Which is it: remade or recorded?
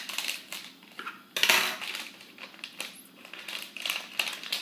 recorded